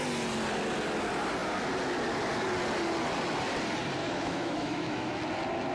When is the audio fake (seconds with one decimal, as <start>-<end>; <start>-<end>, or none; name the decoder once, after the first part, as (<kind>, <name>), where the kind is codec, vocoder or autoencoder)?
4.0-5.2 (autoencoder, DAC-VAE)